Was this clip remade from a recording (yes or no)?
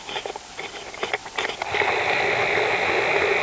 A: no